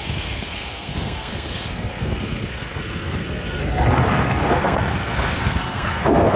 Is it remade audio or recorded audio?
remade